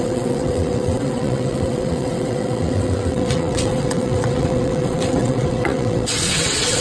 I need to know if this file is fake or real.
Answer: fake